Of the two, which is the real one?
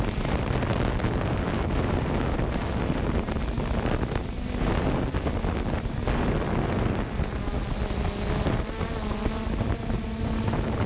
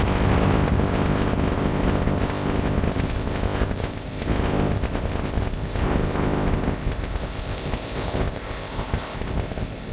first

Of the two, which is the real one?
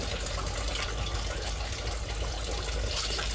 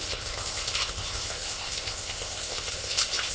first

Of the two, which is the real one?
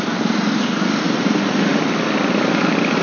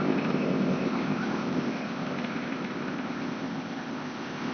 first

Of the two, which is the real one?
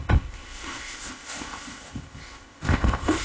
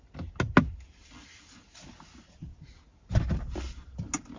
second